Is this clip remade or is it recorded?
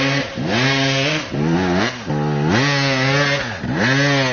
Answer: recorded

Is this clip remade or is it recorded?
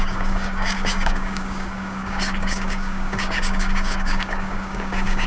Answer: remade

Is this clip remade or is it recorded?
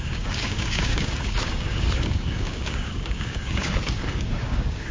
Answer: remade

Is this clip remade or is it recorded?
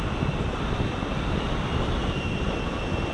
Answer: recorded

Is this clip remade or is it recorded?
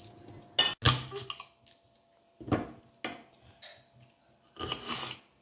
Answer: recorded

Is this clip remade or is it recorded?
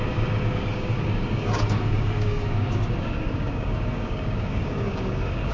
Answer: remade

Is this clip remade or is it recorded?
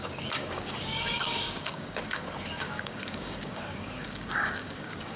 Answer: remade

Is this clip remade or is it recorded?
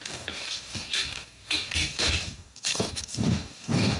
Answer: remade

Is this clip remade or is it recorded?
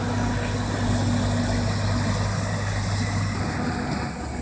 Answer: recorded